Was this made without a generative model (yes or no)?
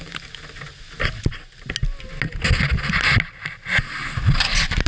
yes